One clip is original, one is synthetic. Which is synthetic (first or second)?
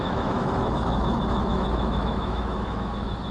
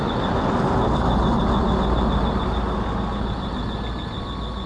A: first